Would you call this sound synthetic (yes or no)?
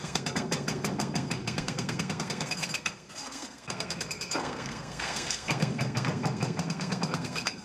yes